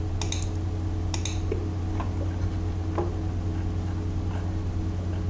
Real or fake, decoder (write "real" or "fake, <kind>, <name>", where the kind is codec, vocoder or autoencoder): real